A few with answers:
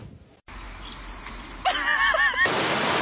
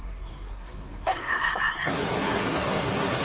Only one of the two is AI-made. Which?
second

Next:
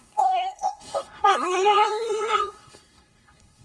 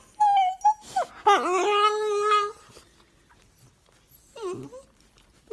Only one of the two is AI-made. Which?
first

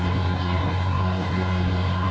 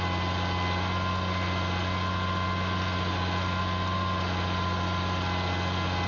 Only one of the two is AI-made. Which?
first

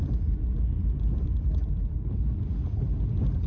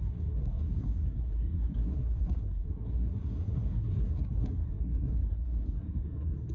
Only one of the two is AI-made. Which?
second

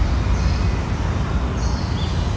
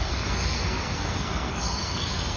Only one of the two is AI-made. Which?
second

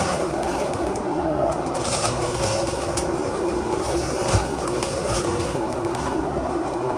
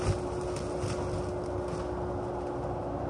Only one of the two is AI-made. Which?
first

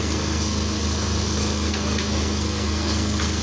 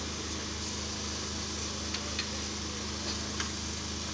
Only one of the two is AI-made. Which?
first